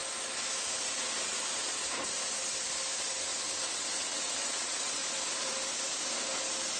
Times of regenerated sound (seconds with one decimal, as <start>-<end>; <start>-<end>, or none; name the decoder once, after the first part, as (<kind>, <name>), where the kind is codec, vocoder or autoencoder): 3.4-5.0 (vocoder, WaveNeXt)